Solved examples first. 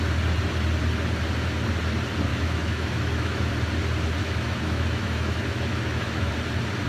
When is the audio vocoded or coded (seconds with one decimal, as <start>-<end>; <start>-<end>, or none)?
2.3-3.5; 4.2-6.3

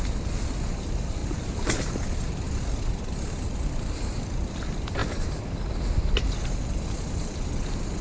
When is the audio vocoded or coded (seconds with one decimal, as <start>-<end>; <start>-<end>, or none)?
1.2-4.5; 5.0-6.8

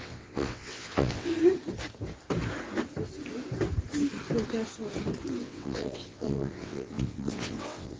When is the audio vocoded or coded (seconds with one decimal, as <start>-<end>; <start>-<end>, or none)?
0.0-1.3; 5.4-8.0

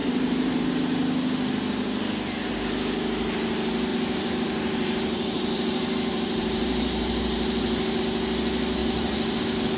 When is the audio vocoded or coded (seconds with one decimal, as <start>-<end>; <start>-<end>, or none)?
0.0-0.6; 3.9-8.0; 8.8-9.4

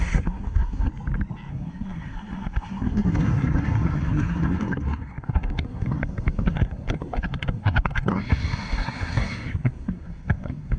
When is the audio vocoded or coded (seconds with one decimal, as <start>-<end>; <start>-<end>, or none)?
0.0-0.9; 1.5-10.8

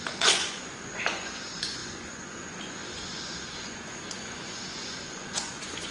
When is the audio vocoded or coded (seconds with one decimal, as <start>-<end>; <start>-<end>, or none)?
0.0-5.9